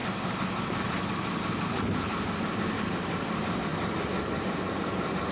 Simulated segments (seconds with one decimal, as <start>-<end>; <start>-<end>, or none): 0.0-3.7; 4.3-5.3